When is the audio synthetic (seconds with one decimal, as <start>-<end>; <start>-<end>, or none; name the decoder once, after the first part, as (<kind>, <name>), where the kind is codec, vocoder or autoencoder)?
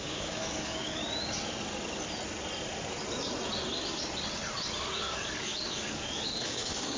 0.0-1.0 (codec, DAC); 5.0-7.0